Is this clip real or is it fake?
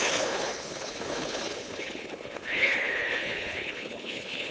fake